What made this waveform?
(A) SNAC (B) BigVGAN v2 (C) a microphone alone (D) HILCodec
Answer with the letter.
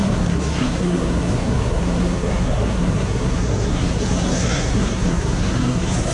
A